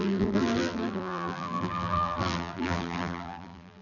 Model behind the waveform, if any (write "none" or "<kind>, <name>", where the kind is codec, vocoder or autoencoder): vocoder, BigVGAN v2